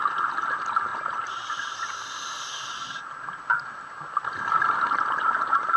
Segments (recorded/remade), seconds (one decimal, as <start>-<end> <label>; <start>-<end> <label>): 0.0-5.8 recorded